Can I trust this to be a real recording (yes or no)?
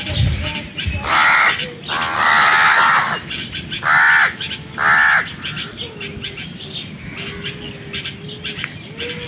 yes